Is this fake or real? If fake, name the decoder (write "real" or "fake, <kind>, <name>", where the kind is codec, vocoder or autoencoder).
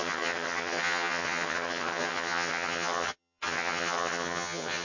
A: fake, vocoder, HiFi-GAN